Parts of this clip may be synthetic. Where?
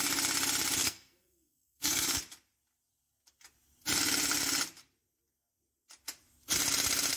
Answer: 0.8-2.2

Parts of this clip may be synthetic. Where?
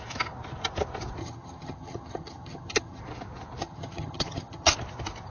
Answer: 1.2-3.0; 3.6-4.7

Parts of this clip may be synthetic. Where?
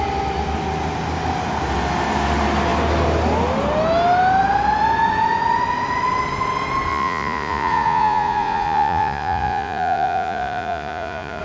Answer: 6.9-11.4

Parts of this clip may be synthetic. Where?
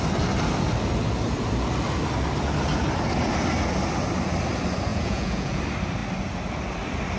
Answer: 4.9-5.6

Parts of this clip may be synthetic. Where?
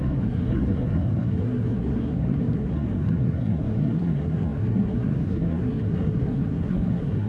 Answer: 0.0-7.3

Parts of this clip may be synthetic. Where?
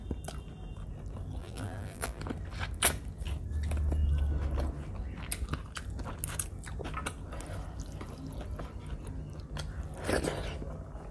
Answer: 1.4-2.2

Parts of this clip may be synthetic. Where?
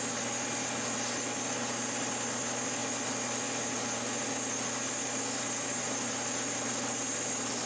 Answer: none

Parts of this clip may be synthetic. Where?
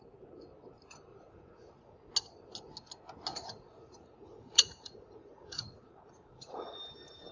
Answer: 1.1-2.1; 3.3-6.8